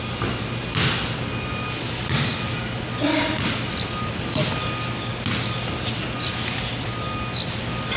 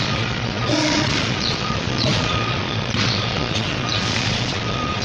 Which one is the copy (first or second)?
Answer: second